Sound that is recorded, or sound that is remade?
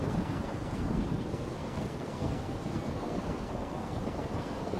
remade